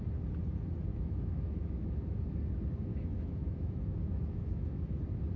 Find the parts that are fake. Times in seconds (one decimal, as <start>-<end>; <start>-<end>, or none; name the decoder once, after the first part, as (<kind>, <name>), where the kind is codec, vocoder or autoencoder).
0.9-2.4 (autoencoder, DAC-VAE); 2.9-5.0